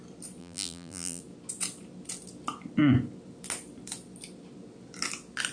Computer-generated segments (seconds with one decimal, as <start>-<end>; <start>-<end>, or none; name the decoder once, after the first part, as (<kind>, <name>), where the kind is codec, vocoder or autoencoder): 0.4-1.2 (vocoder, BigVGAN v2)